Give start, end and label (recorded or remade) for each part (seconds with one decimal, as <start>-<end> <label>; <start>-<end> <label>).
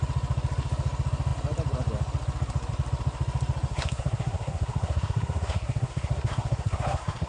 0.0-3.7 recorded; 3.7-7.3 remade